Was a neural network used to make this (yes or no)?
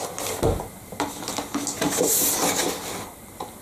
no